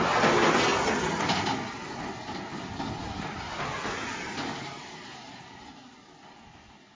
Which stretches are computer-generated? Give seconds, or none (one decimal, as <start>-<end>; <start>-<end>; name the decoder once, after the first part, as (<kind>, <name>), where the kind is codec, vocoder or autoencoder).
none